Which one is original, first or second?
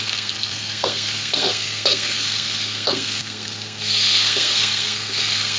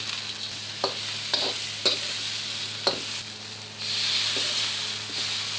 second